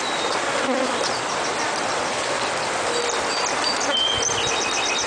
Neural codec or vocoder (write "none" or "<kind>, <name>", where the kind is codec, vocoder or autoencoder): none